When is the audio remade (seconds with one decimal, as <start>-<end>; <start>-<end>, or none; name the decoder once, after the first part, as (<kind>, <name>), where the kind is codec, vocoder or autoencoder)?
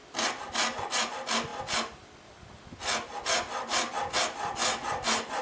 none